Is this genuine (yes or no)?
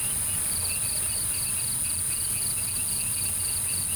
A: yes